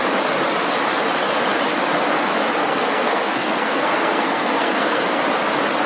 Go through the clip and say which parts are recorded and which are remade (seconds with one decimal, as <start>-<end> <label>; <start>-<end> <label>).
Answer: 0.0-2.6 recorded; 2.6-5.2 remade; 5.2-5.9 recorded